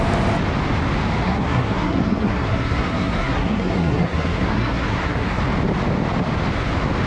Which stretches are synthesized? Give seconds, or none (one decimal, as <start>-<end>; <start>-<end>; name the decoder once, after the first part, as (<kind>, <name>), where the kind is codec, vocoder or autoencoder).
1.2-5.4 (codec, SNAC)